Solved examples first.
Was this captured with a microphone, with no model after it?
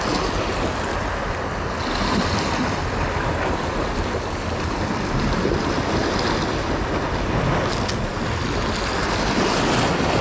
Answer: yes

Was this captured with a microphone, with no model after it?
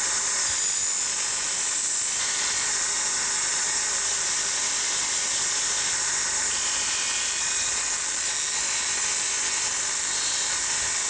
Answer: yes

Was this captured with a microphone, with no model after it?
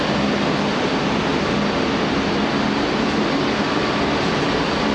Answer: yes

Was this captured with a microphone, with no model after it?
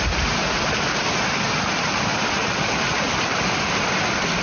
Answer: yes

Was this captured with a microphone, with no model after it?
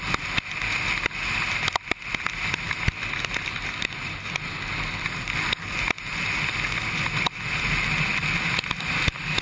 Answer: yes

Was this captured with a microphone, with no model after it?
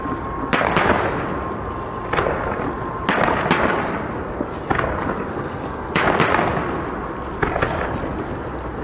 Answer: yes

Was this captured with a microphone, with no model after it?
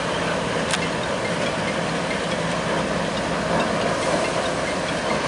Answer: yes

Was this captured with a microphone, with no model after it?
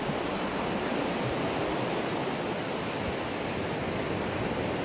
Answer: yes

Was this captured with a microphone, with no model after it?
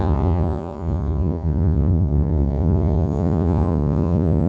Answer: no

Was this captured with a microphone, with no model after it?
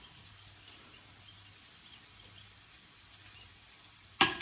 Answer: yes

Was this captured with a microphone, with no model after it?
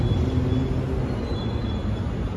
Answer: yes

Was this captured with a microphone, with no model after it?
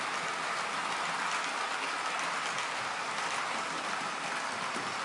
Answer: yes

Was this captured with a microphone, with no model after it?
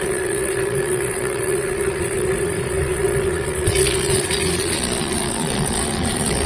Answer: no